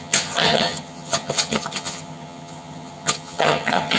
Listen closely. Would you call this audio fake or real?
fake